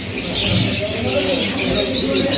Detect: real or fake real